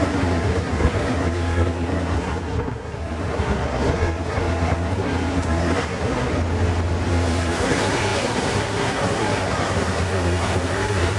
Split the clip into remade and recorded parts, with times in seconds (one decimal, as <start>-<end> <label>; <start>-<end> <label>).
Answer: 0.0-6.3 remade; 6.3-7.1 recorded; 7.1-11.2 remade